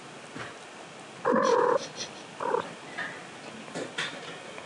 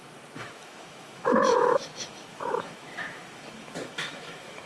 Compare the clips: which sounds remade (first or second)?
second